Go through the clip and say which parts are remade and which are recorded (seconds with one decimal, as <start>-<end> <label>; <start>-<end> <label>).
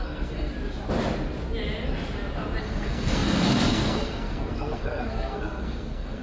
0.0-0.5 remade; 0.5-2.6 recorded; 2.6-6.2 remade